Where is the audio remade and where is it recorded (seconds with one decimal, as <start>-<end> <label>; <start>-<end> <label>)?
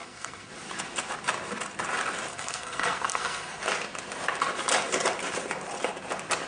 0.0-0.5 remade; 0.5-2.3 recorded; 2.3-3.6 remade; 3.6-6.5 recorded